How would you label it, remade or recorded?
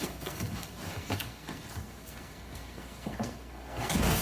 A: remade